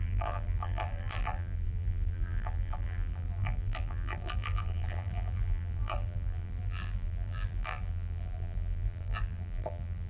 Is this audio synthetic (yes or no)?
yes